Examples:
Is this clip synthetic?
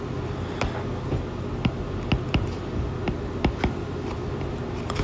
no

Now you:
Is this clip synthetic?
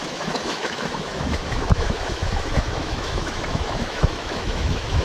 yes